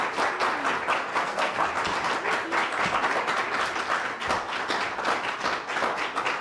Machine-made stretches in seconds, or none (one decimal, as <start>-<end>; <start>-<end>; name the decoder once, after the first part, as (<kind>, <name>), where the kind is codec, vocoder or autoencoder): 1.1-1.7 (codec, SNAC)